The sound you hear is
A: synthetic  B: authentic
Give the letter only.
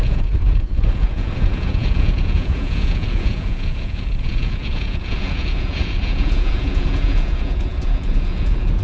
A